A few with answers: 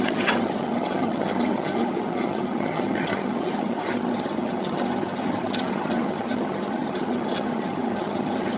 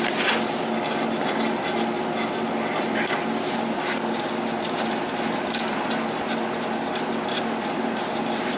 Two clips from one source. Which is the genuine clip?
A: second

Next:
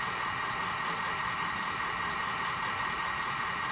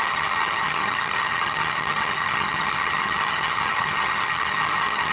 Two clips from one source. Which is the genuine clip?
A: first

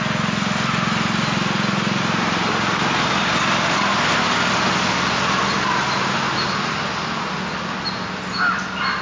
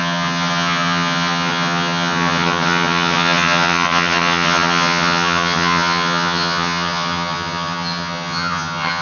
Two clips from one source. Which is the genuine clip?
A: first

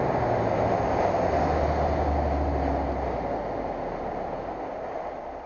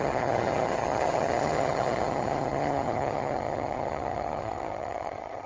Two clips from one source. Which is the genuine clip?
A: first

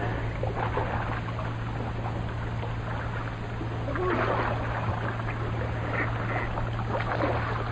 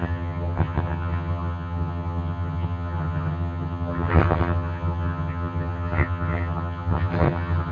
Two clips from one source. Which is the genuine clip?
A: first